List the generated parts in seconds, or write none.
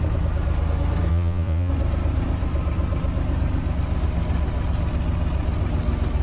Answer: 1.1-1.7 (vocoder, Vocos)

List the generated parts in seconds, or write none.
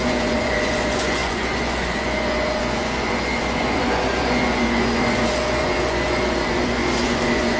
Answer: 0.0-7.6 (vocoder, Vocos)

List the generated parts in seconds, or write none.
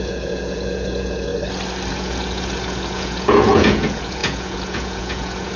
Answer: 0.0-1.3 (vocoder, Vocos); 1.9-5.6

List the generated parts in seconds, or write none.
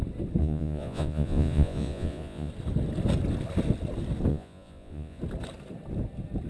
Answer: 0.4-2.5 (vocoder, Vocos); 4.3-5.2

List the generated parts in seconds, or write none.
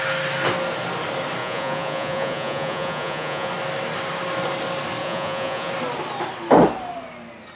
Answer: 1.4-3.5 (vocoder, Vocos); 5.0-5.7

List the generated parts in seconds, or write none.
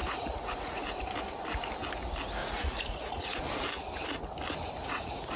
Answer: 0.0-1.0 (vocoder, Vocos); 2.4-3.4; 4.8-5.4